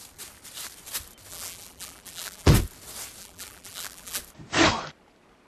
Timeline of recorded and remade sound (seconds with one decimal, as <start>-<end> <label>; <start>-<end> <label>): 0.0-1.3 recorded; 1.3-2.5 remade; 2.5-3.2 recorded; 3.2-4.2 remade; 4.2-5.5 recorded